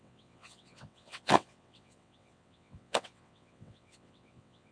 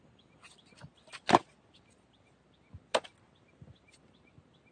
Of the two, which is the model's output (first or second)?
first